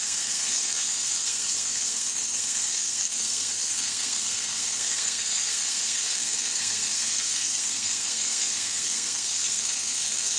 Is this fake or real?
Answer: fake